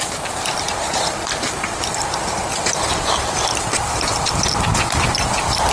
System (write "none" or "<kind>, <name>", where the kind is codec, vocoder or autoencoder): none